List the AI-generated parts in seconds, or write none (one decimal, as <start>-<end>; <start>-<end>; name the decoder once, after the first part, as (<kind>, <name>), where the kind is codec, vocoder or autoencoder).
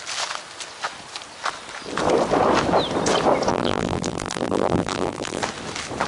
3.5-5.4 (vocoder, BigVGAN v2)